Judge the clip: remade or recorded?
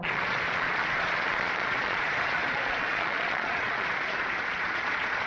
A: remade